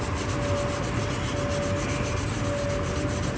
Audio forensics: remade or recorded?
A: recorded